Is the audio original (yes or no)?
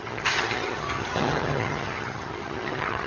no